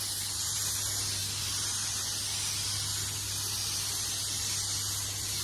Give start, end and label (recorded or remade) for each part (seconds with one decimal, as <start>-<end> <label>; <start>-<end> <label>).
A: 0.0-5.4 recorded